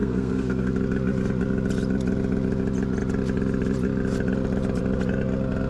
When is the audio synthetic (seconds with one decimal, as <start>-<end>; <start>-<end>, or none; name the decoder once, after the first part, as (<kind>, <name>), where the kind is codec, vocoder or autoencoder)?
0.0-0.7 (codec, SNAC)